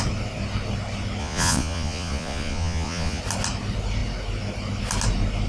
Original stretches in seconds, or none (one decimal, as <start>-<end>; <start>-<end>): 0.0-1.2; 3.2-5.5